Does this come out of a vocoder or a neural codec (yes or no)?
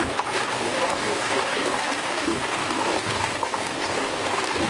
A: yes